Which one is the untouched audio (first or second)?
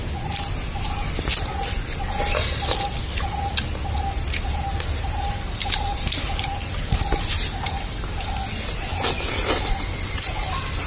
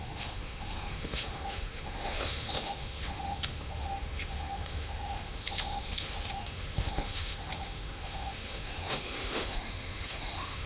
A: first